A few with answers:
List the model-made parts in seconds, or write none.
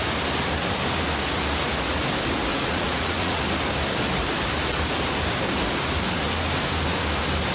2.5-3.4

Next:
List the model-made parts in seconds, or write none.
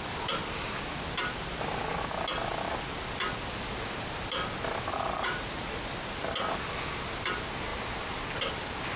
4.9-5.7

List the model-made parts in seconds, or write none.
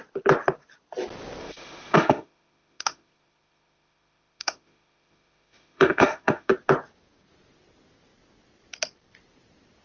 1.4-6.5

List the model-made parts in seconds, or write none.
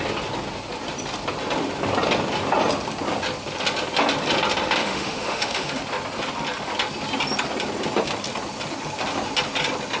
4.8-5.8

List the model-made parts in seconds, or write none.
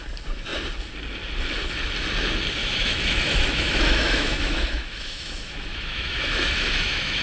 2.6-7.2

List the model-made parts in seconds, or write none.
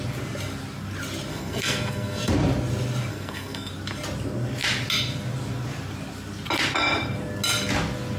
1.3-2.3; 3.1-3.7